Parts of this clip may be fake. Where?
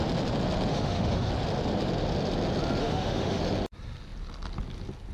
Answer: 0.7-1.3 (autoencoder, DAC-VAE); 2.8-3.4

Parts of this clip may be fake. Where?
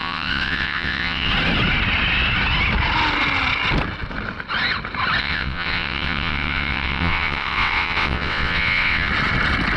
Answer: 0.0-1.3 (vocoder, WaveNeXt); 5.2-9.1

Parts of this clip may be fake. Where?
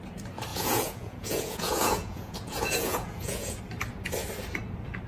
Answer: 0.5-3.6 (vocoder, Vocos)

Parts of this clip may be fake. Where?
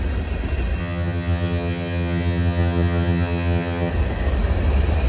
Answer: 0.8-3.9 (vocoder, HiFi-GAN)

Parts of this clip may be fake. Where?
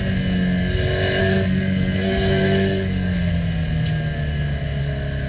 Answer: 1.2-3.3 (codec, SNAC)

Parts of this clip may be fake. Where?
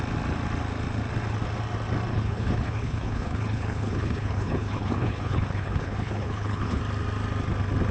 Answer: 2.1-6.8 (codec, HILCodec)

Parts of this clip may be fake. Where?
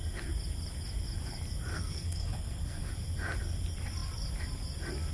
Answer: 1.7-2.9 (codec, SNAC)